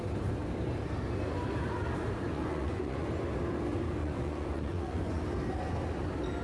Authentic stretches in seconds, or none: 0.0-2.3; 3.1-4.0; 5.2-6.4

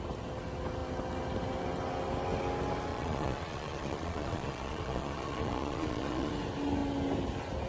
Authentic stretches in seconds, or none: 0.0-2.9; 6.3-7.7

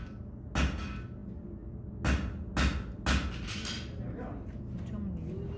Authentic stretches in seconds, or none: 0.0-5.6

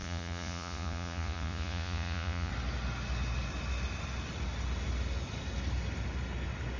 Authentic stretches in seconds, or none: 2.5-6.8

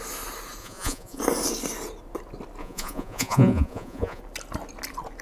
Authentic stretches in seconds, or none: 0.0-0.6; 1.2-2.6; 4.2-5.2